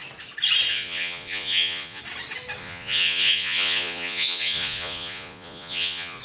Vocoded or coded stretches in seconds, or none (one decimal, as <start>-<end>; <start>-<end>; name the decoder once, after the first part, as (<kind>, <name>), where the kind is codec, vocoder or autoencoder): 0.7-2.0 (vocoder, Vocos); 2.6-6.2